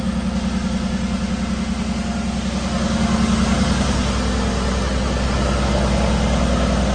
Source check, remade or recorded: recorded